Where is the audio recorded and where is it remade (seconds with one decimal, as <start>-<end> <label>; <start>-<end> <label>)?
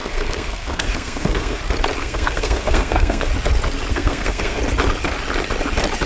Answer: 0.0-1.6 remade; 1.6-2.0 recorded; 2.0-3.3 remade; 3.3-3.9 recorded; 3.9-4.6 remade; 4.6-6.1 recorded